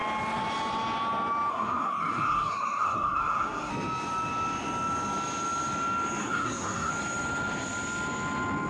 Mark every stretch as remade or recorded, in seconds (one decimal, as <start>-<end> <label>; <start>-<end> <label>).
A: 0.0-1.5 recorded; 1.5-3.7 remade; 3.7-6.2 recorded; 6.2-6.9 remade; 6.9-8.7 recorded